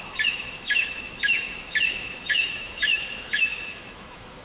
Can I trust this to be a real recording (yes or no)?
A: no